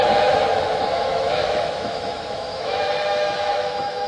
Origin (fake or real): fake